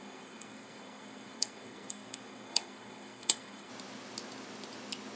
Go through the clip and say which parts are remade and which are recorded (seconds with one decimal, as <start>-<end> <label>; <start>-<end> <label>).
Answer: 0.0-3.7 remade; 3.7-5.2 recorded